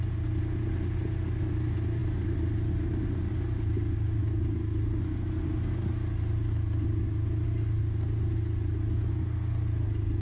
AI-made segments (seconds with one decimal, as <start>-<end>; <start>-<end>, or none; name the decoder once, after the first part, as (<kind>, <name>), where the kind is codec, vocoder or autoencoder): none